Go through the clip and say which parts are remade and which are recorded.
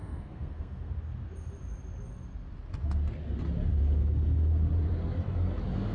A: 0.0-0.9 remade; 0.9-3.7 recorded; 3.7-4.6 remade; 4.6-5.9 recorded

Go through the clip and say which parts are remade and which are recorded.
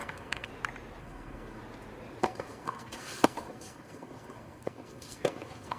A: 0.0-0.5 remade; 0.5-1.0 recorded; 1.0-1.6 remade; 1.6-2.2 recorded; 2.2-5.8 remade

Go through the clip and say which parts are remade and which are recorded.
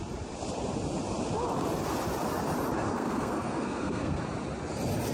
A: 0.0-2.9 recorded; 2.9-4.2 remade; 4.2-5.1 recorded